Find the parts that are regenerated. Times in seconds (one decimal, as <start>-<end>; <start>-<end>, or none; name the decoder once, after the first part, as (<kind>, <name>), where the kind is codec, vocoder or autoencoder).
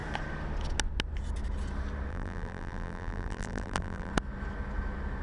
2.1-4.1 (vocoder, BigVGAN v2)